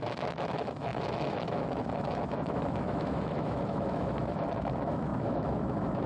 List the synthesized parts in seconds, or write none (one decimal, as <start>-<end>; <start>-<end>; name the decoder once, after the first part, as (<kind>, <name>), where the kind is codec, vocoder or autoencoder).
0.0-6.1 (autoencoder, DAC-VAE)